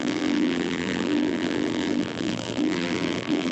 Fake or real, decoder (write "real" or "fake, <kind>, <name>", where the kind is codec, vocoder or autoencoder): fake, vocoder, BigVGAN v2